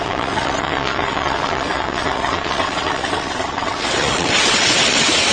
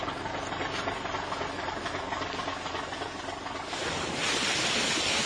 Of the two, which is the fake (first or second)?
first